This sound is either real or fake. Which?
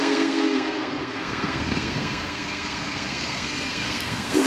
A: fake